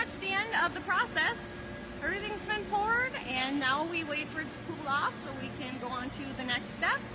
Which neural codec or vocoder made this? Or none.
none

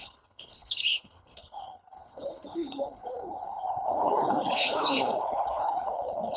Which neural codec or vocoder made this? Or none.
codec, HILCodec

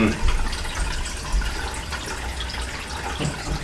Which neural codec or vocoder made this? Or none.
none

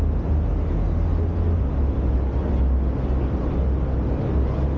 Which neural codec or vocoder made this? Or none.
none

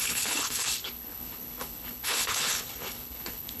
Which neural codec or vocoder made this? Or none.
codec, HILCodec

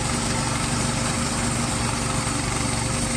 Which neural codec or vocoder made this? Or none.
none